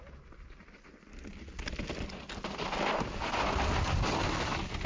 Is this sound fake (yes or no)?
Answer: no